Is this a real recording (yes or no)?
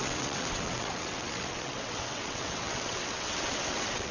no